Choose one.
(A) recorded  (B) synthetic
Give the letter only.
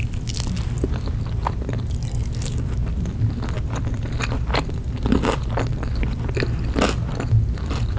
A